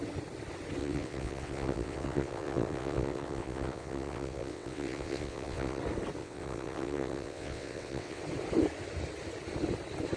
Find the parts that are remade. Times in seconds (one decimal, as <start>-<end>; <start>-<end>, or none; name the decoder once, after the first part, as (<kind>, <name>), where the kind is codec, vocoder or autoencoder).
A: 0.8-5.8 (vocoder, WaveNeXt); 6.2-8.2